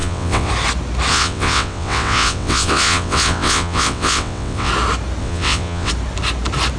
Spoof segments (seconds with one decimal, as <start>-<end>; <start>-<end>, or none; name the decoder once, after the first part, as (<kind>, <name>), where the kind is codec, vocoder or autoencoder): 0.0-0.5 (vocoder, WaveNeXt); 1.1-4.7; 5.2-5.9